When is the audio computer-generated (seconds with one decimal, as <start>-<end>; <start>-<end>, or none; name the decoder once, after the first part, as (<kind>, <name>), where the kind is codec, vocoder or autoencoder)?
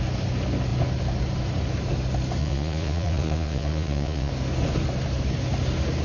2.4-4.3 (vocoder, Vocos)